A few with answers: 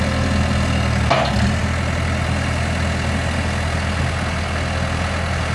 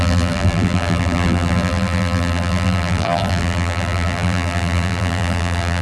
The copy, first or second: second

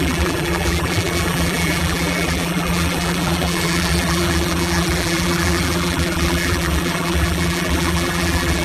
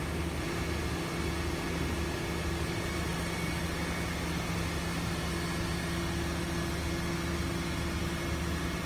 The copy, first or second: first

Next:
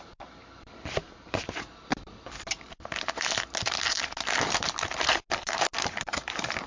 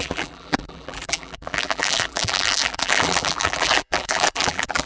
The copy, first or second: second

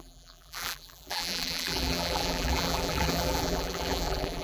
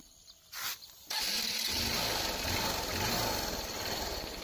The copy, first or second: first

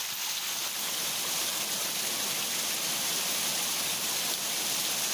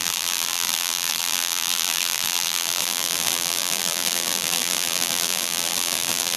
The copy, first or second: second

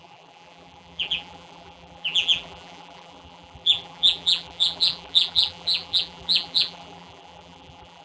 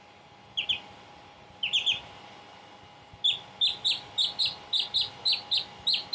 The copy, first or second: first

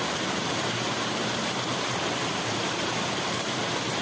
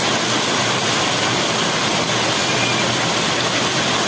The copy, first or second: first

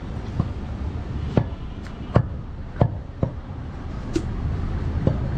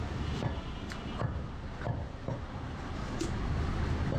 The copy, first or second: first